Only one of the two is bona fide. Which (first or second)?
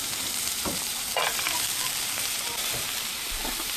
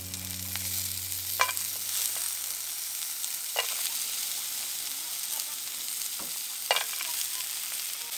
second